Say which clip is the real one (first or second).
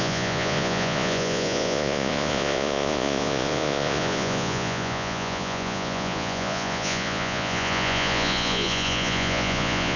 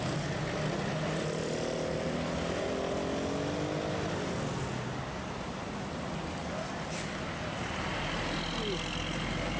second